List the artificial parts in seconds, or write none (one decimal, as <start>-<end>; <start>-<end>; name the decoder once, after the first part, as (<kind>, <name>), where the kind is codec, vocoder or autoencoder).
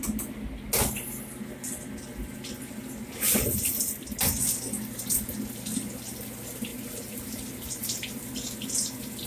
6.7-8.3 (vocoder, BigVGAN v2)